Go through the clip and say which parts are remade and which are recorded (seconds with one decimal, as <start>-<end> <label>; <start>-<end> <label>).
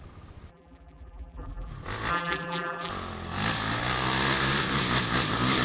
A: 0.0-0.5 recorded; 0.5-1.7 remade; 1.7-2.1 recorded; 2.1-2.9 remade; 2.9-5.6 recorded